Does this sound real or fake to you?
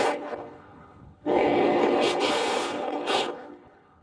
fake